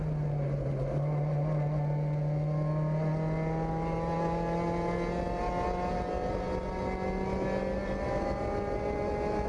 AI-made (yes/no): no